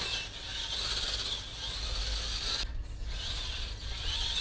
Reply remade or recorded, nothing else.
recorded